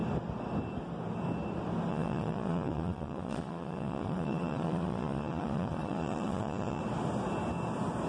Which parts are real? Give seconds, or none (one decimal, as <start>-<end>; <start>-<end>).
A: 0.0-1.9; 6.8-8.1